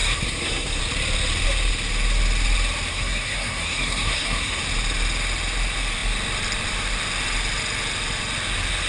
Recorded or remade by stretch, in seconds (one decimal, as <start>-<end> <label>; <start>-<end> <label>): 0.0-0.8 remade; 0.8-2.9 recorded; 2.9-4.6 remade; 4.6-8.9 recorded